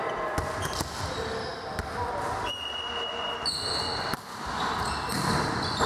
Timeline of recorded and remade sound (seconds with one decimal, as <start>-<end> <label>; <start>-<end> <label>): 0.0-5.9 recorded